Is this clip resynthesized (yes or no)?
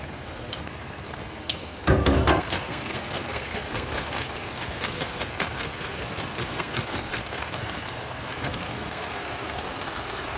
yes